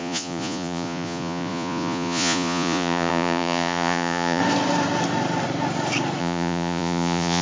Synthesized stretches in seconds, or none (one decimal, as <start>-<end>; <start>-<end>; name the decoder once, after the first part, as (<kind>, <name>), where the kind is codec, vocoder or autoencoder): 0.0-4.4 (vocoder, Vocos); 6.2-7.4

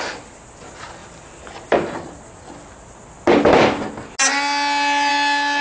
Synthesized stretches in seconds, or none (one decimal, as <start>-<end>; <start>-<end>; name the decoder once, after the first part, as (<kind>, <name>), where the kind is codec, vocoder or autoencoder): none